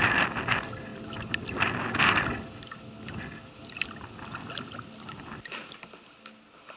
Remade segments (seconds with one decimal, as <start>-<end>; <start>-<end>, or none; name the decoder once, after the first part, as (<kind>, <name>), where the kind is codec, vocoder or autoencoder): none